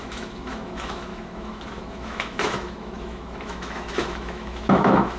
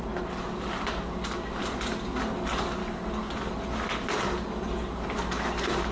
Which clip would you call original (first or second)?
second